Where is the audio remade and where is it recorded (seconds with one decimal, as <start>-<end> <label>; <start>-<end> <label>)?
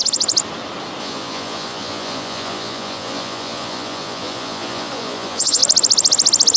0.0-1.0 recorded; 1.0-5.6 remade; 5.6-6.6 recorded